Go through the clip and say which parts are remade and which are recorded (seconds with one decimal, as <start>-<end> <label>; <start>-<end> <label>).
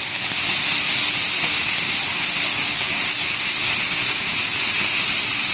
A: 0.0-2.5 recorded; 2.5-3.0 remade; 3.0-5.5 recorded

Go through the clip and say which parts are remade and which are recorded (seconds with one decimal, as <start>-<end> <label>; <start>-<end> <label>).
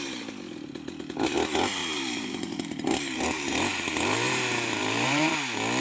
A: 0.0-1.8 recorded; 1.8-5.3 remade; 5.3-5.8 recorded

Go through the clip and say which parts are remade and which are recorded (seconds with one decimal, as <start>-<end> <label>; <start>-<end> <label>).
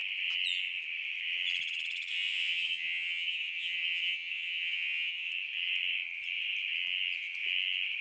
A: 0.0-2.1 recorded; 2.1-5.3 remade; 5.3-8.0 recorded